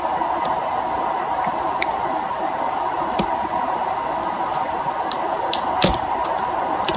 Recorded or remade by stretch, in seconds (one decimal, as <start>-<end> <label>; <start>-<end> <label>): 0.0-7.0 recorded

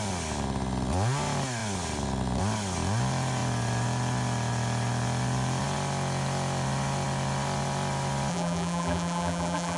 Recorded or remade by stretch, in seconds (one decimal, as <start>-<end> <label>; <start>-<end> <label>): 0.0-8.3 recorded; 8.3-9.8 remade

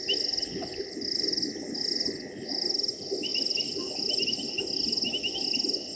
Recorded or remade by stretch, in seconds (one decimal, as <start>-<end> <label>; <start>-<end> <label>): 0.0-3.3 recorded; 3.3-4.6 remade; 4.6-6.0 recorded